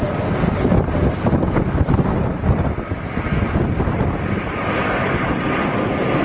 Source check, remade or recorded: recorded